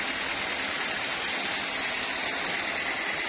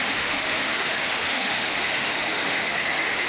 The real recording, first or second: first